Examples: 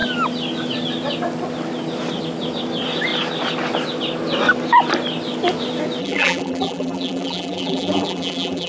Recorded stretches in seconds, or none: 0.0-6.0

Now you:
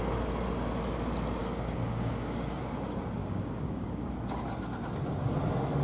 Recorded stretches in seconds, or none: 0.0-1.4; 2.6-3.2; 4.1-5.8

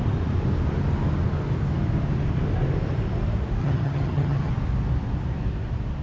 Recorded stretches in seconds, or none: 0.0-3.6; 4.5-6.0

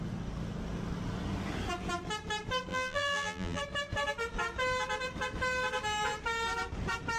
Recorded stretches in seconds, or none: 0.0-2.7; 3.6-7.2